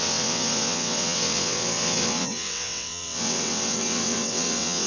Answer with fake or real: fake